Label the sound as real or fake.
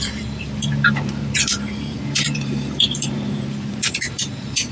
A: fake